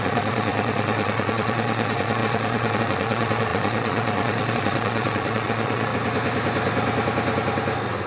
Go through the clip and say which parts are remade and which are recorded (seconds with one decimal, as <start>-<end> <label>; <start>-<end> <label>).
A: 0.0-5.9 remade; 5.9-8.1 recorded